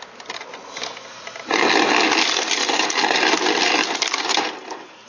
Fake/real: real